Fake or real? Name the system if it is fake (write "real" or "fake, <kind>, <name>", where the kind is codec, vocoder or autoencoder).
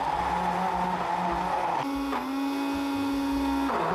real